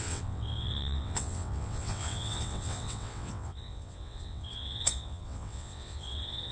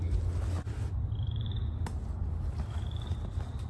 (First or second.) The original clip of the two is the second